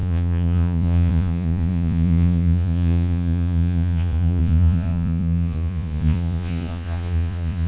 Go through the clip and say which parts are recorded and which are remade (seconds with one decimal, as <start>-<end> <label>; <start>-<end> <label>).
0.0-7.7 remade